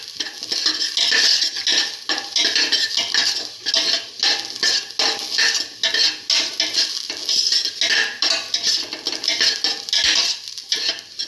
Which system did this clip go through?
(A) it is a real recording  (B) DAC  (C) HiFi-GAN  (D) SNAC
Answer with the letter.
A